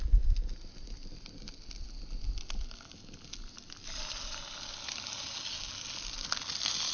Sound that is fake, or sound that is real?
real